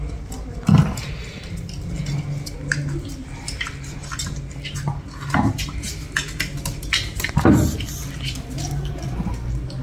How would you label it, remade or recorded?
recorded